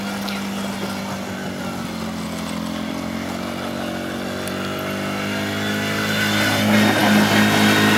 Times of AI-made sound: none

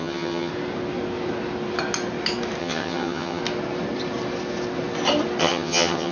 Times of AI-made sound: 0.0-0.5; 2.6-3.4; 5.4-6.1

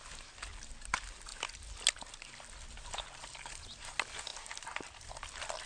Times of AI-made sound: none

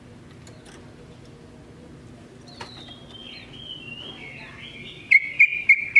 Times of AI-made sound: none

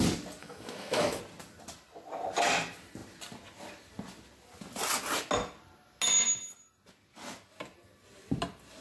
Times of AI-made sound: 0.4-1.2

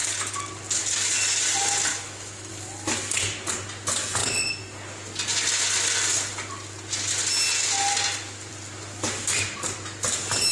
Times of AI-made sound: 1.9-2.5

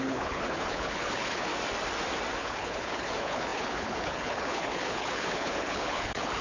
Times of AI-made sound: 0.0-1.5; 2.4-6.4